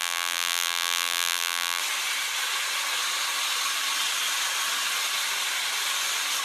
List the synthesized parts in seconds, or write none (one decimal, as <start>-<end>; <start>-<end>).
0.0-1.8